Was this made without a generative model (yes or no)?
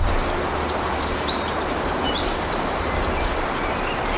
no